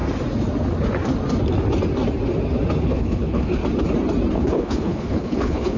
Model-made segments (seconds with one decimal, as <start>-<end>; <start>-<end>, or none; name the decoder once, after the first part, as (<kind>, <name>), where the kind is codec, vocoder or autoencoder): 2.8-3.6 (codec, HILCodec); 4.3-5.8